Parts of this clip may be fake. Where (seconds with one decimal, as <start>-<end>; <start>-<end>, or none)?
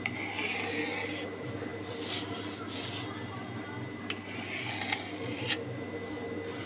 none